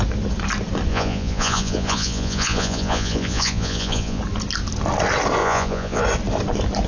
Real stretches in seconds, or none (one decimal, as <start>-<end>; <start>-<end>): 0.0-0.9; 4.2-5.4; 6.0-6.9